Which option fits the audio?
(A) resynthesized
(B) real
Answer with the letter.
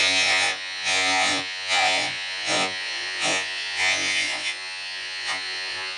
A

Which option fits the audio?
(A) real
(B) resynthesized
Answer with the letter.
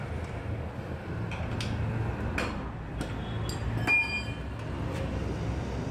A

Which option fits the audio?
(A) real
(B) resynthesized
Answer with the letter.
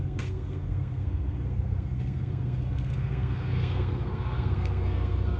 B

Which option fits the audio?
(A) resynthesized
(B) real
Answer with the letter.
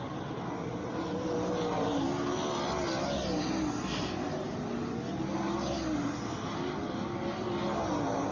B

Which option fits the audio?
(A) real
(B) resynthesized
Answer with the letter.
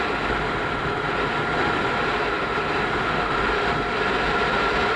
A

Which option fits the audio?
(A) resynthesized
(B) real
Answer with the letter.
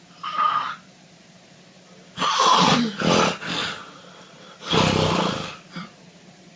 B